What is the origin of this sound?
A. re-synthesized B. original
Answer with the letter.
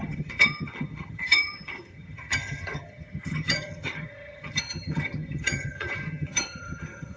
A